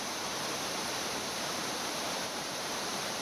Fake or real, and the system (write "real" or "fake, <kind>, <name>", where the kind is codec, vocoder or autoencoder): fake, vocoder, BigVGAN v2